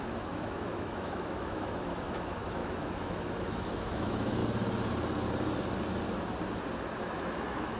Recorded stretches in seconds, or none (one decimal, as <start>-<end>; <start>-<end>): 4.4-7.0